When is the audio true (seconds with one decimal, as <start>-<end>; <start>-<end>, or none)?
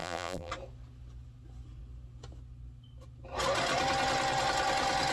0.5-5.1